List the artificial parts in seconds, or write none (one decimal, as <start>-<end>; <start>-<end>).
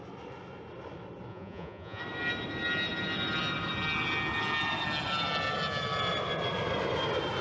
1.3-2.0